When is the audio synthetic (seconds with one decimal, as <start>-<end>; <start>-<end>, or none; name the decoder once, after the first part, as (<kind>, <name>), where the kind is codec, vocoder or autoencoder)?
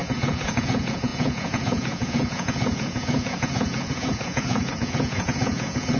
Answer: 0.0-6.0 (vocoder, Vocos)